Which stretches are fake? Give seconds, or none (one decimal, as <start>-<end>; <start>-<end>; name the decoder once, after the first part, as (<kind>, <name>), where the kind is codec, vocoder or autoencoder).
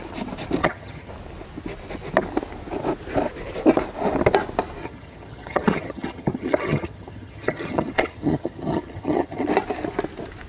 0.6-1.1 (vocoder, HiFi-GAN); 4.8-9.5